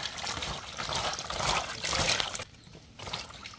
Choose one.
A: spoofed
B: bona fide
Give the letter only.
A